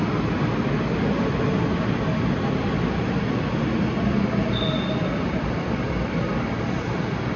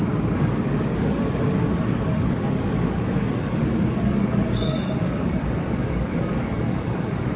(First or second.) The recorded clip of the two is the first